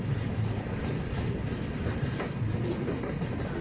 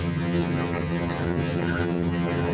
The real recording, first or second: first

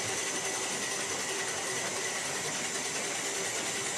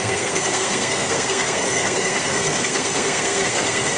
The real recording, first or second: first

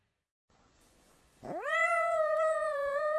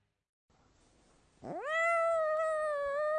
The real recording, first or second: second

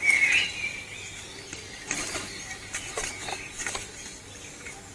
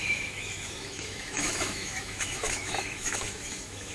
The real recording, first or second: first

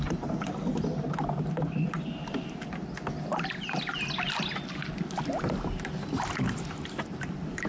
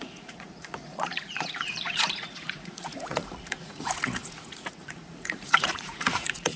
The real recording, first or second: first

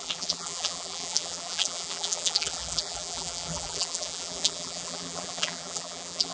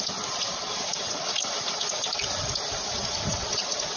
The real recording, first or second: second